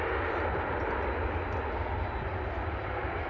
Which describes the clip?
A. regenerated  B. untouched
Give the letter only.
B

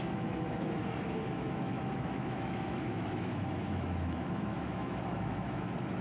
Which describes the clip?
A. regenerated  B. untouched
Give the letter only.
A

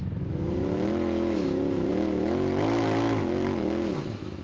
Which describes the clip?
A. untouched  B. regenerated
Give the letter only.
B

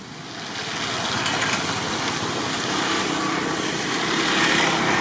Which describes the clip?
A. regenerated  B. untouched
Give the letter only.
B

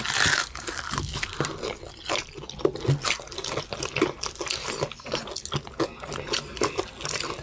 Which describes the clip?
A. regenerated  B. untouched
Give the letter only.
B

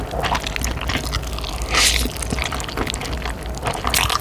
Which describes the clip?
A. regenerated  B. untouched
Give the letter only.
B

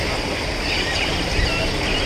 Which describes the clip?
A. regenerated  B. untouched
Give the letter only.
B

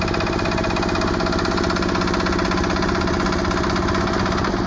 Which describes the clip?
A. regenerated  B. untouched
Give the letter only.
B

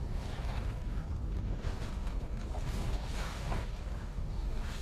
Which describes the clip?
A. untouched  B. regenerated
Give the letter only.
B